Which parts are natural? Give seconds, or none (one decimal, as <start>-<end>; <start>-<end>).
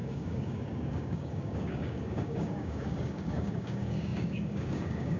none